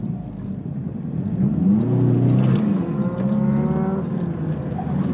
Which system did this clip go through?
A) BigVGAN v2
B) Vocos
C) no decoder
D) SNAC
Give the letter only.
C